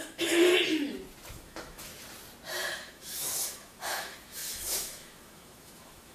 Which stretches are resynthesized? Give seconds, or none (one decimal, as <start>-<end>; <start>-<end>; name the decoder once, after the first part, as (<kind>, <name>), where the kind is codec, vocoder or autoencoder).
0.0-0.5 (autoencoder, DAC-VAE); 1.3-1.9; 2.7-6.1